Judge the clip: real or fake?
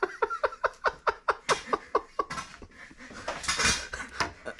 real